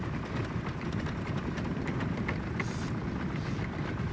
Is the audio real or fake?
fake